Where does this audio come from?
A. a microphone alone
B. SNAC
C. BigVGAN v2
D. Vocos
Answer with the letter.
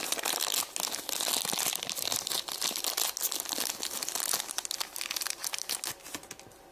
A